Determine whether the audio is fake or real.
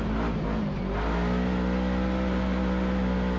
real